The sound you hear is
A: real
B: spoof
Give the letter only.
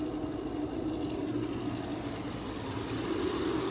A